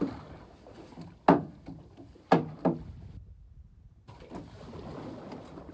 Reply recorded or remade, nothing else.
recorded